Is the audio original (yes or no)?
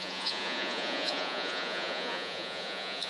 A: no